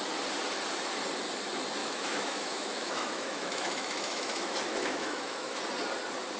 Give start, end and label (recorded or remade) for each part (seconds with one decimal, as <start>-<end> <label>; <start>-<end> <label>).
0.0-1.8 recorded; 1.8-5.6 remade; 5.6-6.4 recorded